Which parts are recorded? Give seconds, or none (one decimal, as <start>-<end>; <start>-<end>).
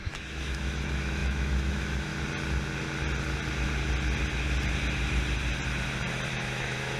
2.1-6.3